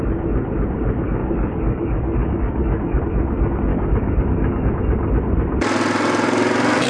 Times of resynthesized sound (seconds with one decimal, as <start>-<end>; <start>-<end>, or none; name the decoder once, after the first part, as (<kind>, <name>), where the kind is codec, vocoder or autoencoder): 1.2-3.0 (codec, DAC); 3.7-4.7